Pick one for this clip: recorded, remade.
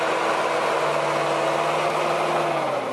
recorded